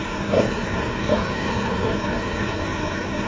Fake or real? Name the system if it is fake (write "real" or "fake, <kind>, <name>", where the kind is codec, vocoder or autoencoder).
fake, codec, SNAC